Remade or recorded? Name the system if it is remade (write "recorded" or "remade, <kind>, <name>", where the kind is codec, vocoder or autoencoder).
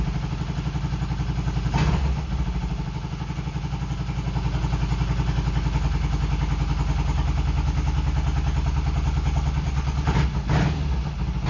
recorded